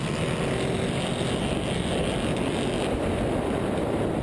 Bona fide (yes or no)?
yes